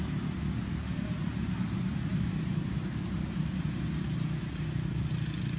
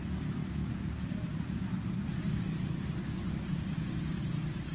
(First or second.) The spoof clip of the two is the second